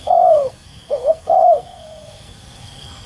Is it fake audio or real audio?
fake